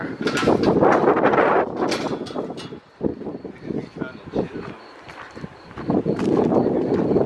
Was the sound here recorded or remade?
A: recorded